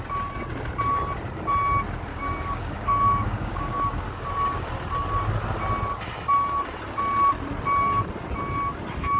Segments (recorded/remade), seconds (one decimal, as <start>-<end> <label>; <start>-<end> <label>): 0.0-2.1 recorded; 2.1-4.7 remade; 4.7-9.2 recorded